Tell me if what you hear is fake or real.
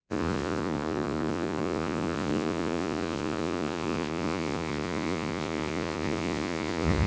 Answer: fake